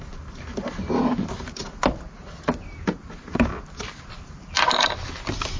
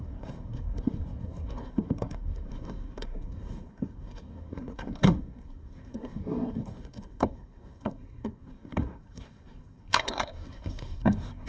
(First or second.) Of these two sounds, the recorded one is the first